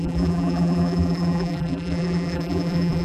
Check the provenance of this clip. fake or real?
fake